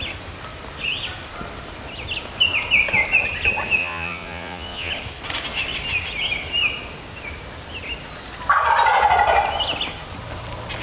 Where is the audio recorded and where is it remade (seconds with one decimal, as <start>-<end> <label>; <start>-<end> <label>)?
0.0-3.8 recorded; 3.8-4.9 remade; 4.9-10.8 recorded